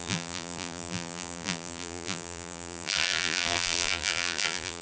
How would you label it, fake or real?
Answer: fake